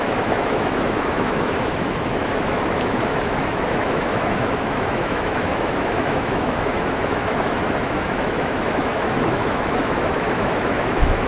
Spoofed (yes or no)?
yes